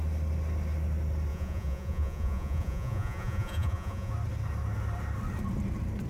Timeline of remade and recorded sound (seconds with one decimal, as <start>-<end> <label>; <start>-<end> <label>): 0.0-1.3 recorded; 1.3-4.1 remade; 4.1-6.1 recorded